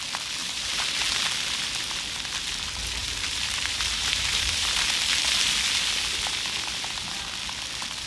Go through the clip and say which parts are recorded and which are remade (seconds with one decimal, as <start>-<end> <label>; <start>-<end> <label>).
0.0-0.4 recorded; 0.4-1.0 remade; 1.0-3.0 recorded; 3.0-4.8 remade; 4.8-8.1 recorded